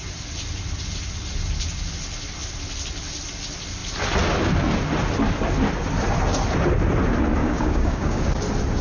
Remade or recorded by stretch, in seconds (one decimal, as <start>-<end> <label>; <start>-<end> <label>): 0.0-7.4 recorded; 7.4-8.2 remade; 8.2-8.8 recorded